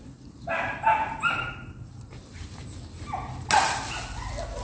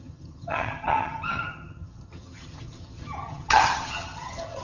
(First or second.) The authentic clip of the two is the first